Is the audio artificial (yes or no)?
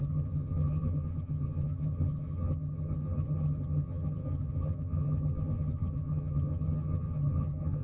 yes